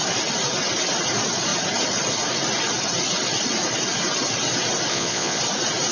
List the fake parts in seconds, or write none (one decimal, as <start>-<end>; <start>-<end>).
4.9-5.4